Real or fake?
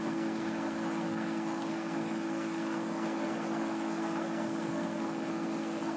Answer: fake